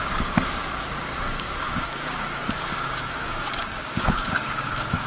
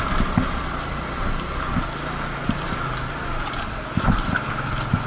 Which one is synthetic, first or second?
first